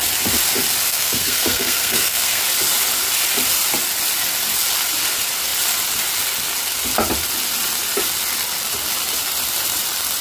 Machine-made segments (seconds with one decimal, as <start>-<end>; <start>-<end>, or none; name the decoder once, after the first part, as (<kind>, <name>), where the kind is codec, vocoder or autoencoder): 0.9-2.4 (codec, SNAC)